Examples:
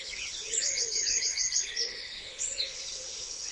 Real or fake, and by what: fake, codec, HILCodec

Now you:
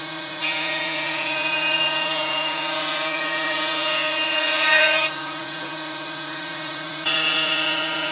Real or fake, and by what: fake, vocoder, Vocos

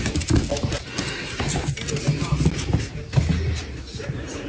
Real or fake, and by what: real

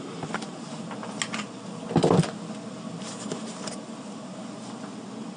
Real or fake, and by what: real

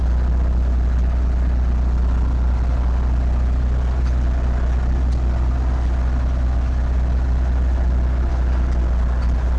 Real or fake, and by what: real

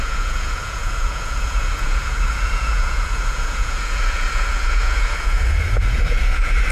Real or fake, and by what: fake, vocoder, Vocos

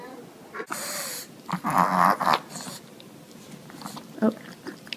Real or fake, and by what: real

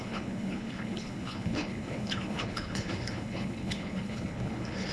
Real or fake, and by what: fake, codec, HILCodec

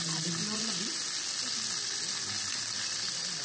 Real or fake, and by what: real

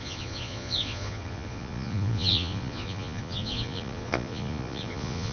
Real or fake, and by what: fake, vocoder, Vocos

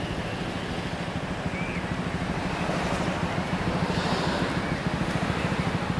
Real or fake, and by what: real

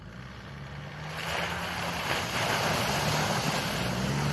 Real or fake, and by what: real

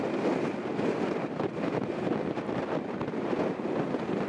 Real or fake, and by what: real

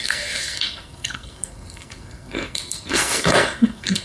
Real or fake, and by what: fake, codec, SNAC